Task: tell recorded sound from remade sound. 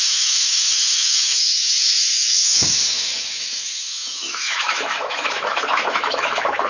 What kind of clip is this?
remade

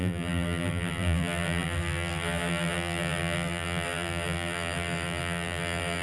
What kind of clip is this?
remade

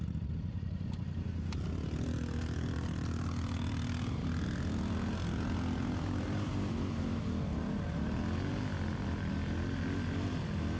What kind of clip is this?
recorded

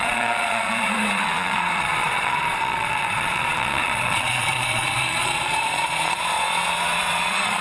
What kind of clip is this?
remade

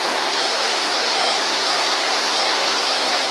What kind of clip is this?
remade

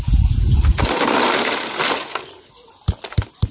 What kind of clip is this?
recorded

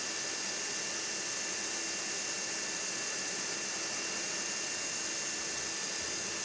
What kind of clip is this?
recorded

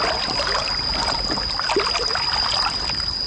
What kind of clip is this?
recorded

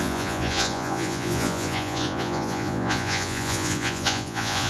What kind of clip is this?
remade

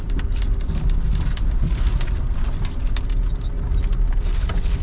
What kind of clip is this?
recorded